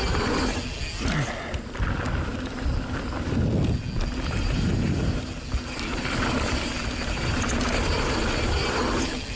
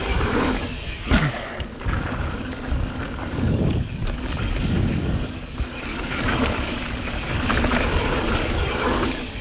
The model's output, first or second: second